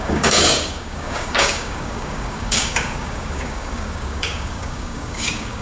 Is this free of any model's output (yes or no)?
no